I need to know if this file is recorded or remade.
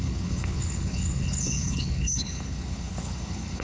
remade